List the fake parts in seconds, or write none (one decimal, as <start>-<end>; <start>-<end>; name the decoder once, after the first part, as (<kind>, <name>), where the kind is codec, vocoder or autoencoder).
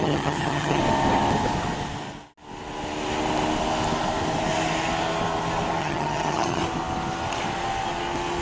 0.0-0.8 (vocoder, HiFi-GAN); 5.8-6.6